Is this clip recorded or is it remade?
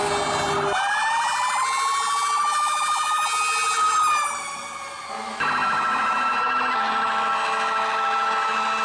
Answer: recorded